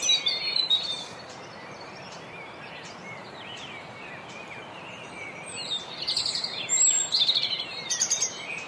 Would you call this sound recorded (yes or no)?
no